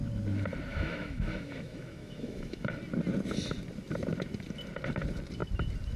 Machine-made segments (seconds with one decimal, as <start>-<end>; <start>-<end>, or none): 0.7-2.8